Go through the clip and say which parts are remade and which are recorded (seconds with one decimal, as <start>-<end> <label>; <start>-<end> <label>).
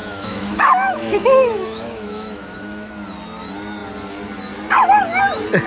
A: 0.0-2.9 remade; 2.9-5.7 recorded